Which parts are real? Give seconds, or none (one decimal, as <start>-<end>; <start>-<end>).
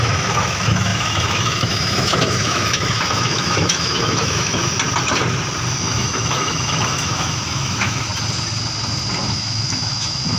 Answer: 4.6-5.8; 8.1-9.3